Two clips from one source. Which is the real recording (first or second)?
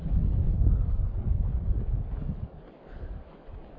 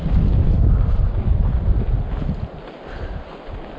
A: second